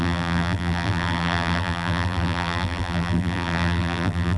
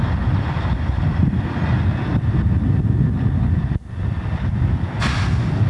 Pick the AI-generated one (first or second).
first